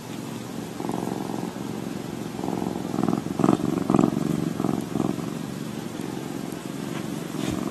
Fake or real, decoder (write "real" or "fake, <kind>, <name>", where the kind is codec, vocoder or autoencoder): real